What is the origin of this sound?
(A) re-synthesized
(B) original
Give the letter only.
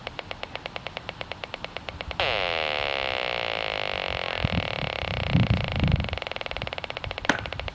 B